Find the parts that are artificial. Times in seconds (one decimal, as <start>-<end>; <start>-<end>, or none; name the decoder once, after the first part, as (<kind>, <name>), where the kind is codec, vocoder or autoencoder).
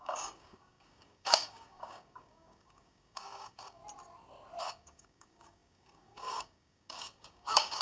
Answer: 0.0-3.8 (codec, DAC); 4.6-7.8